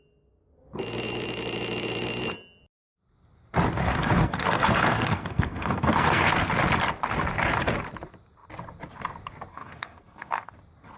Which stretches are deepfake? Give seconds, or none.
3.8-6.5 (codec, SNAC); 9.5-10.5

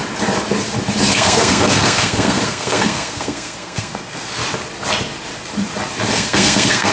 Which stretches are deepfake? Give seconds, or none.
1.1-4.4 (codec, SNAC); 6.1-6.9

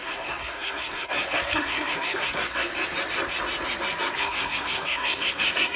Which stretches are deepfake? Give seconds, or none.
0.0-2.7 (codec, SNAC); 4.2-5.8

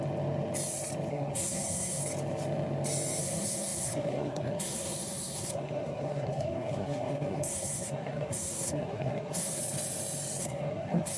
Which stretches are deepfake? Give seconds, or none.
1.1-2.0 (codec, SNAC); 3.2-9.6; 10.4-11.2

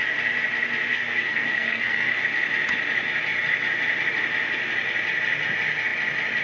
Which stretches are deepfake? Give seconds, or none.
0.9-2.2 (codec, SNAC)

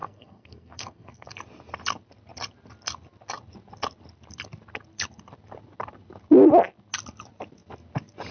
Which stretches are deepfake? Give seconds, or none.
0.0-1.3 (codec, SNAC)